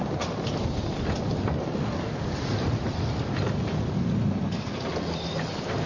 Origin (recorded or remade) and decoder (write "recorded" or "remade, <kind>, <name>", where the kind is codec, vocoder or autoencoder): recorded